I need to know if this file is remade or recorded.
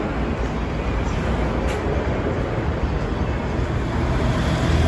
recorded